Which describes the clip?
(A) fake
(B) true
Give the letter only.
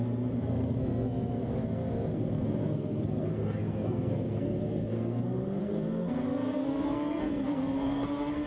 A